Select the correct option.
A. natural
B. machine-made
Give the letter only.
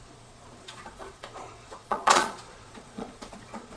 B